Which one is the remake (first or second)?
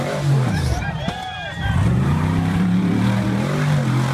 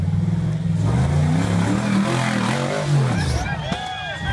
first